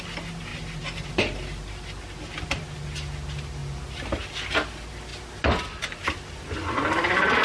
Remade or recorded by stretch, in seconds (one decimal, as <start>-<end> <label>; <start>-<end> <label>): 0.0-0.5 recorded; 0.5-2.6 remade; 2.6-7.4 recorded